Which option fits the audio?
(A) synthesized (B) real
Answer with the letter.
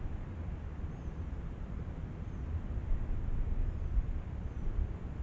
B